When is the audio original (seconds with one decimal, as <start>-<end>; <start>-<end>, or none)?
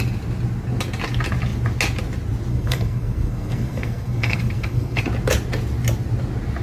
0.0-2.5; 5.0-6.6